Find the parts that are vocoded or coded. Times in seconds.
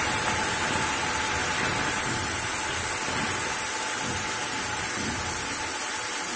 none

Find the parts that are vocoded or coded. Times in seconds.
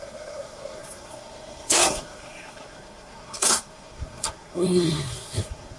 0.0-5.8 (codec, SNAC)